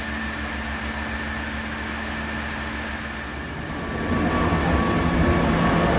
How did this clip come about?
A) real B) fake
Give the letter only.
A